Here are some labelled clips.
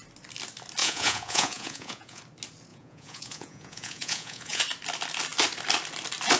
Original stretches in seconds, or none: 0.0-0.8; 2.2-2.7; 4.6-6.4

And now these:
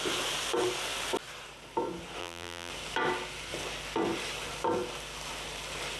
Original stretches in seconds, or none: 0.0-2.2; 2.7-6.0

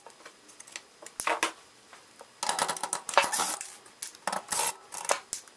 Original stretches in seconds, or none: 0.0-5.6